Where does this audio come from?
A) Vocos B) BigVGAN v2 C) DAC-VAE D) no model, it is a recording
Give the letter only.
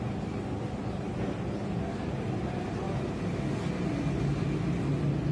D